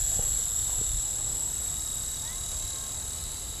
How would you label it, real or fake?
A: real